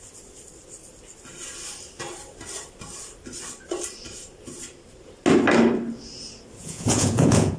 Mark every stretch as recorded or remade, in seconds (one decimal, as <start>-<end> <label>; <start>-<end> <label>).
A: 0.0-6.6 recorded; 6.6-7.6 remade